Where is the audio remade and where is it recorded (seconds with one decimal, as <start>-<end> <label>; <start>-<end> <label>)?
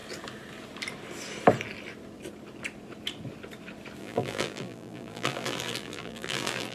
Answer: 0.0-4.0 recorded; 4.0-6.7 remade